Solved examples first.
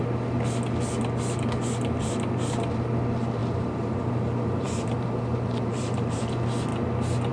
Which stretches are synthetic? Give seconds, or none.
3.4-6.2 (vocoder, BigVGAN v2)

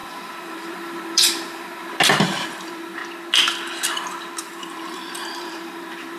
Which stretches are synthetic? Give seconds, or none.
0.0-3.0 (vocoder, BigVGAN v2); 4.4-6.2

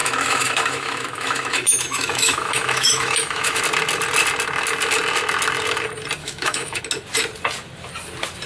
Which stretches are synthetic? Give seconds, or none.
0.0-3.6 (autoencoder, DAC-VAE); 6.2-6.8

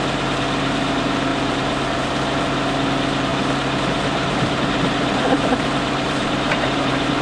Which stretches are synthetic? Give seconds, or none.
1.3-2.4 (vocoder, BigVGAN v2); 3.3-7.2